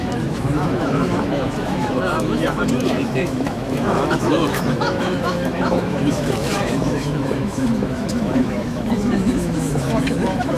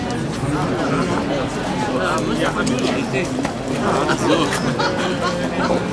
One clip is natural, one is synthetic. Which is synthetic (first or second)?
first